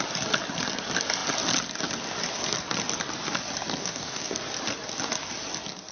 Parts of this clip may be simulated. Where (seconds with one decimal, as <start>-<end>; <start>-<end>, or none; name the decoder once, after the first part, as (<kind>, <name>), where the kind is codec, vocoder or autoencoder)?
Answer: 3.8-4.3 (codec, DAC)